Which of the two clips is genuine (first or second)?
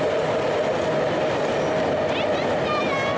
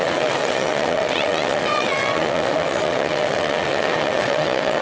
first